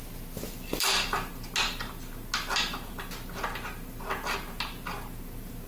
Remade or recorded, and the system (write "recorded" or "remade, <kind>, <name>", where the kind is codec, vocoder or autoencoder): recorded